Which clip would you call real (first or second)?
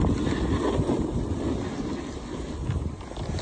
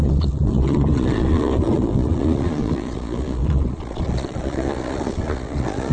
first